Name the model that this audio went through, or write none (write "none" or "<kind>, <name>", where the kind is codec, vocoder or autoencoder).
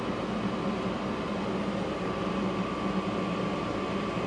none